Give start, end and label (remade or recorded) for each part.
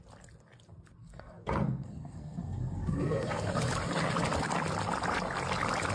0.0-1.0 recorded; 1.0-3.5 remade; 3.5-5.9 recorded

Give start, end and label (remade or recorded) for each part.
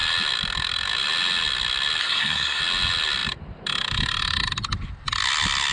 0.0-2.0 recorded; 2.0-2.6 remade; 2.6-5.7 recorded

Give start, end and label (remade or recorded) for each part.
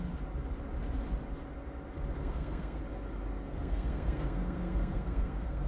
0.0-2.2 recorded; 2.2-2.8 remade; 2.8-3.3 recorded; 3.3-5.7 remade